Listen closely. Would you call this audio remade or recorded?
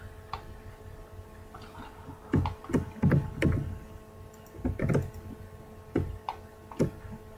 recorded